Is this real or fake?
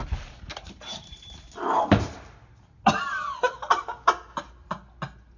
real